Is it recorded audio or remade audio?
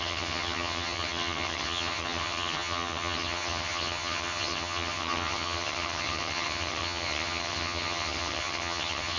remade